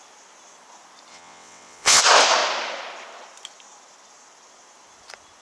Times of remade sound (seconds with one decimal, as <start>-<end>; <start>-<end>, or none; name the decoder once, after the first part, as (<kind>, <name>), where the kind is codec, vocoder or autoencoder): 1.1-2.0 (vocoder, WaveNeXt)